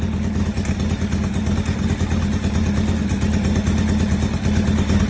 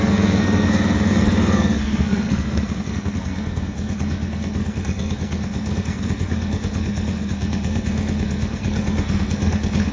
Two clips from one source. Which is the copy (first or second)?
second